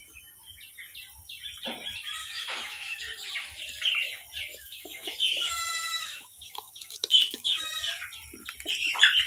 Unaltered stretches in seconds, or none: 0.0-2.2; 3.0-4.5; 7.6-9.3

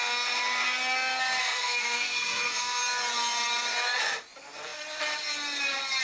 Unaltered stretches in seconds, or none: 0.0-1.4; 2.8-6.0

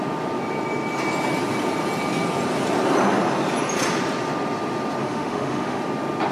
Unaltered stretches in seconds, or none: 0.0-5.0; 5.8-6.3

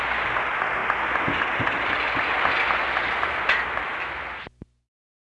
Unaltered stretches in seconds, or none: 0.0-5.3

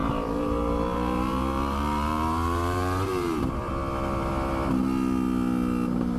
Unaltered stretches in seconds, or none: 3.7-6.2

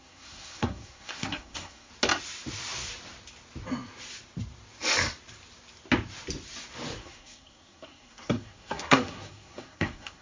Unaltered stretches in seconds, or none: 1.9-7.0

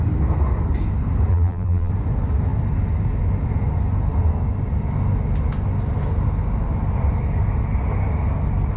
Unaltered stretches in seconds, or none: 0.0-1.3; 1.9-8.8